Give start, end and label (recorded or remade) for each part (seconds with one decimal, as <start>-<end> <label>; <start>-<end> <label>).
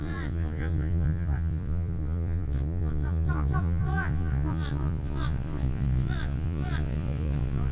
0.0-7.7 remade